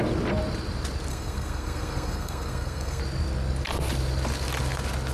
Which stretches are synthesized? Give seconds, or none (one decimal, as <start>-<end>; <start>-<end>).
1.1-3.0